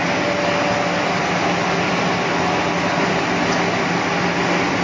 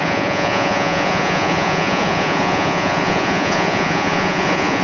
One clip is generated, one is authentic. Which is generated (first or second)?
second